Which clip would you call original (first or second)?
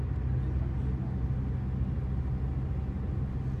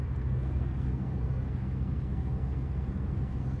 first